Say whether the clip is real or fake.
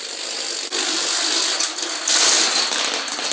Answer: real